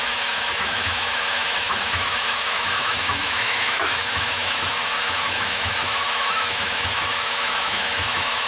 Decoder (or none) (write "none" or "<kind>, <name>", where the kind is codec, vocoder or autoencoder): autoencoder, DAC-VAE